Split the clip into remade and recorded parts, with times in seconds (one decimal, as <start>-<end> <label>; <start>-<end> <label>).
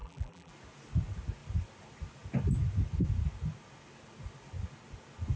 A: 0.0-0.5 remade; 0.5-5.4 recorded